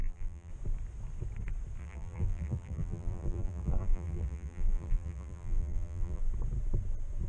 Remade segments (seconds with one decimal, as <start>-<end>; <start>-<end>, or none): 0.0-0.5; 1.8-6.2